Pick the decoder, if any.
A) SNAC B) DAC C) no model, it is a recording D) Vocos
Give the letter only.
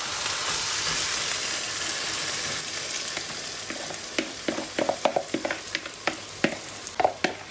C